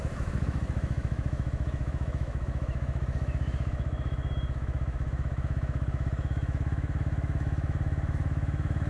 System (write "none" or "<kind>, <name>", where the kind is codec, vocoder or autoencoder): autoencoder, DAC-VAE